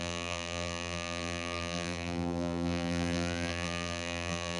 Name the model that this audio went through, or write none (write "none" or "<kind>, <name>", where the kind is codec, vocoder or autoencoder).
vocoder, BigVGAN v2